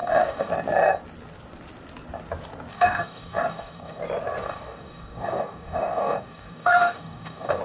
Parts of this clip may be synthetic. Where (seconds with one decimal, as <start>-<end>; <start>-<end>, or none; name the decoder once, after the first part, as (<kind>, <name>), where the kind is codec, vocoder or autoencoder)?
0.0-0.5 (codec, DAC); 2.7-4.0; 4.4-7.6